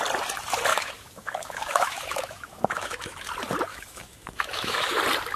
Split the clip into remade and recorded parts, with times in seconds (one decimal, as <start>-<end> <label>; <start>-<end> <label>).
0.0-0.7 recorded; 0.7-3.3 remade; 3.3-3.7 recorded; 3.7-5.0 remade; 5.0-5.4 recorded